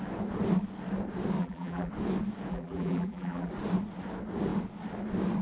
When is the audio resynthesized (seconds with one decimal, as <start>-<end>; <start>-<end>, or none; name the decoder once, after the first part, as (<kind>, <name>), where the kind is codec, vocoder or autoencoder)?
1.4-1.9 (vocoder, BigVGAN v2); 2.5-3.5